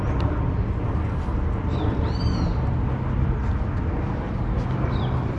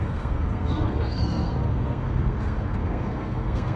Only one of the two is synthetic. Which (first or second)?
second